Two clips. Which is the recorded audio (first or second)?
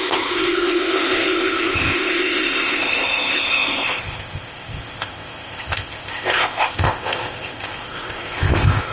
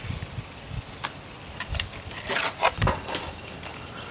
second